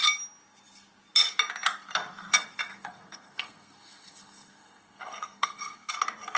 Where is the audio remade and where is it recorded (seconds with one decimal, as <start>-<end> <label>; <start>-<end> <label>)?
0.0-2.7 recorded; 2.7-5.9 remade; 5.9-6.4 recorded